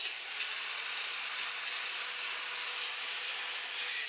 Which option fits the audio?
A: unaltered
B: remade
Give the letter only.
A